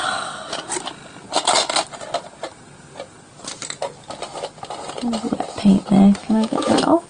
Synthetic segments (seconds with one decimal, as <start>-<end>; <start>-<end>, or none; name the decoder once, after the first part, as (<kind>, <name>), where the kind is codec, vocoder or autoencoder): 6.2-7.1 (autoencoder, DAC-VAE)